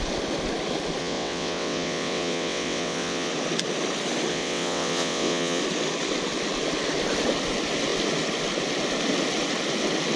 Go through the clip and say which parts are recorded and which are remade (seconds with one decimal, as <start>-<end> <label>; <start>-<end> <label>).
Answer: 0.0-1.0 recorded; 1.0-3.3 remade; 3.3-4.3 recorded; 4.3-5.6 remade; 5.6-10.2 recorded